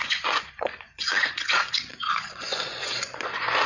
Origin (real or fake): fake